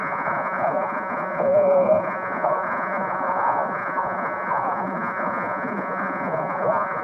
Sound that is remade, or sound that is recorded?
remade